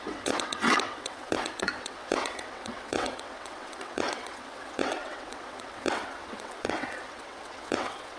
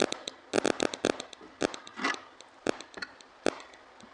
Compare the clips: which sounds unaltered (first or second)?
second